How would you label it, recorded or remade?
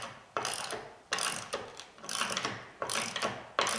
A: recorded